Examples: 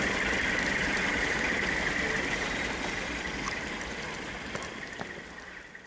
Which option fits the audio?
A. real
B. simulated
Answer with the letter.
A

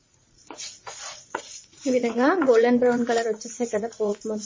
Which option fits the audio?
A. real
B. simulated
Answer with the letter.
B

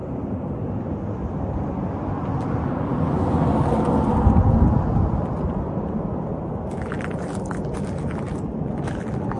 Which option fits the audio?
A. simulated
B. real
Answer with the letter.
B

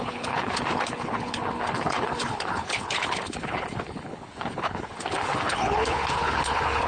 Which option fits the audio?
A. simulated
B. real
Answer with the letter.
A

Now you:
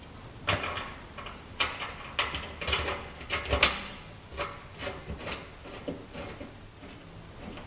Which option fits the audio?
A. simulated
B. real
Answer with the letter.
B